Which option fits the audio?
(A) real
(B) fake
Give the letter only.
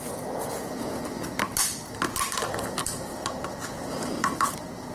A